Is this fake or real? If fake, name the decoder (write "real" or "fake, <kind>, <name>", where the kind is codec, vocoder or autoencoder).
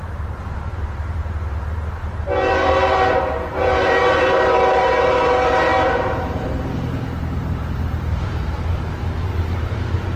fake, vocoder, BigVGAN v2